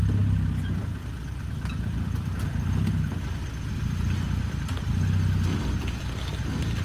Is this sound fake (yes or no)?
no